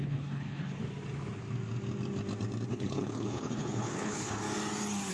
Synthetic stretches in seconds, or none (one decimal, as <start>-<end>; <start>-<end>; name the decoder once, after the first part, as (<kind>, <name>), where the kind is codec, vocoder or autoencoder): 0.0-0.8 (codec, HILCodec); 2.7-4.4

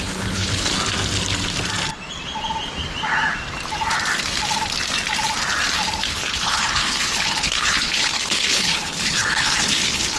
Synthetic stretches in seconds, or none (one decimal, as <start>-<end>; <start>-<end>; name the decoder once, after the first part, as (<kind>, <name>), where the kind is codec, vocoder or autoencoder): 0.0-0.7 (codec, HILCodec); 6.0-10.2

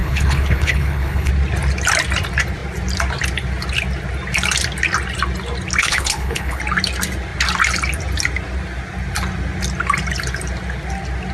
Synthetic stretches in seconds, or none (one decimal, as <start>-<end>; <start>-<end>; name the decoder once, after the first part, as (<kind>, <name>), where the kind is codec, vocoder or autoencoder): 0.0-1.3 (codec, HILCodec); 5.8-6.6

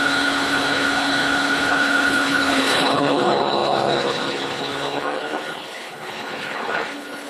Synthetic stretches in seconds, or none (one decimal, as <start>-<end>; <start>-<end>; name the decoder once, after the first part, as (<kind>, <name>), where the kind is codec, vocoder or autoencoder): 0.0-7.3 (codec, HILCodec)